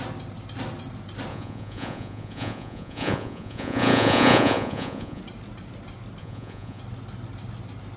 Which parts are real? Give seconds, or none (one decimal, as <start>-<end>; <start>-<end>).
0.0-1.3; 5.2-6.2; 6.8-8.0